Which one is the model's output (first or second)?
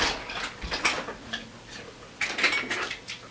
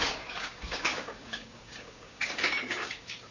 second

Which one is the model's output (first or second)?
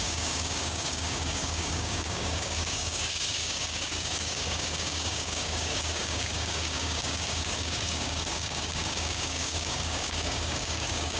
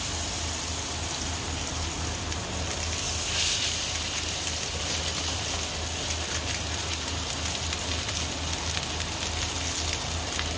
first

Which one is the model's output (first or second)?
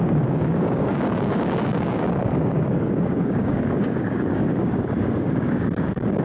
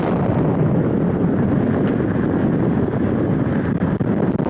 first